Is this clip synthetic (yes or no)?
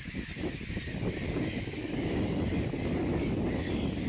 no